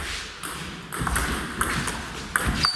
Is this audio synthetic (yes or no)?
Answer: no